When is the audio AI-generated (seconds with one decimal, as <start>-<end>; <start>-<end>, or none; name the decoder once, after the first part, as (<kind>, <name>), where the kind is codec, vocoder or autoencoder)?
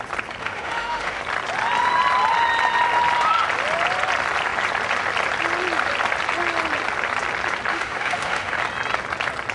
0.4-1.2 (autoencoder, DAC-VAE); 7.7-8.6